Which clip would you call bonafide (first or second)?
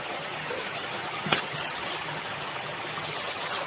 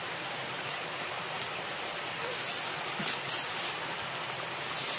second